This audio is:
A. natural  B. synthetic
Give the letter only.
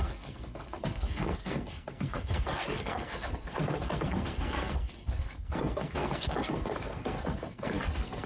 B